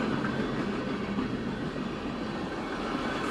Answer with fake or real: real